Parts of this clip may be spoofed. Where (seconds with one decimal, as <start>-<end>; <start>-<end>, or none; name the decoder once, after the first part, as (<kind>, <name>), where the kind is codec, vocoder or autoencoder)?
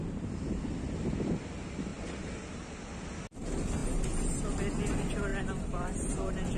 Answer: 1.9-2.9 (vocoder, BigVGAN v2); 5.3-6.1